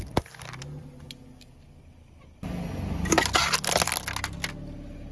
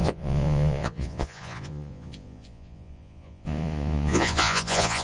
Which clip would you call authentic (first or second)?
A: first